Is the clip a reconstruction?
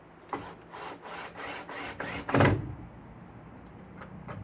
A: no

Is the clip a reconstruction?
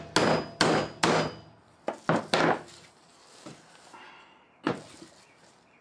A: no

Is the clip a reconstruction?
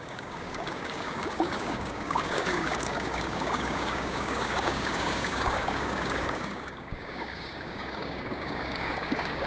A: yes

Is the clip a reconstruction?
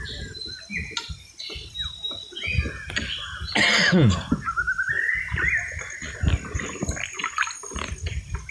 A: no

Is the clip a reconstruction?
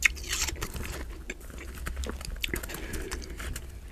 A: no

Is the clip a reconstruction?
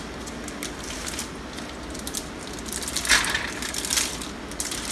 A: no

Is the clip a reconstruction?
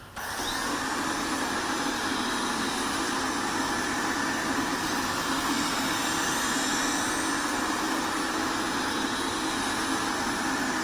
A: no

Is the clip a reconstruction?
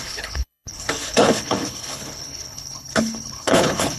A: yes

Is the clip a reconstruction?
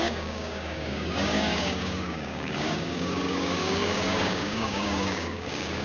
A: yes